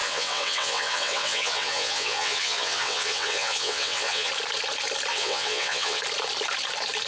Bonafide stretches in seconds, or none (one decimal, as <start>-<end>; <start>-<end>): 4.3-5.1; 6.0-7.1